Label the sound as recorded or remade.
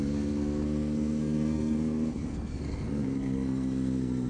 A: remade